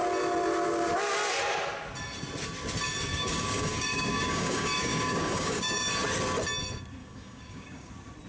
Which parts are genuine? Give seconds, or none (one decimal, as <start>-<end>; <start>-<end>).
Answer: 0.0-3.1; 5.9-7.0; 7.9-8.3